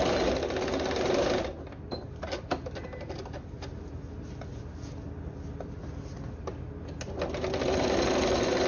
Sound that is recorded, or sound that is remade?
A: recorded